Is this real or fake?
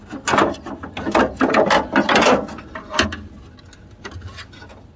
real